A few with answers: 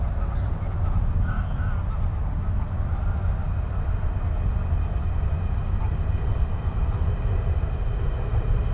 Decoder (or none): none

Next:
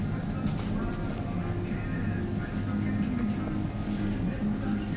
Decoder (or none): none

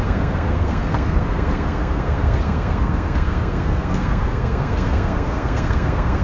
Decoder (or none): codec, SNAC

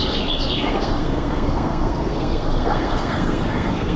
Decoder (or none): codec, SNAC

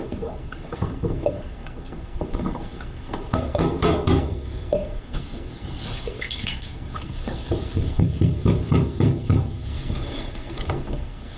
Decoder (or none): codec, SNAC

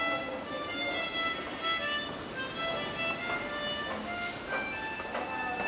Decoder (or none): none